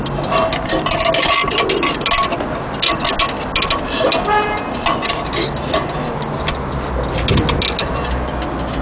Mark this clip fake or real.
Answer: real